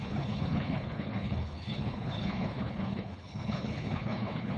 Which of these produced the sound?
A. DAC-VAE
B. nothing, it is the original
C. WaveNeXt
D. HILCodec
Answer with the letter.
D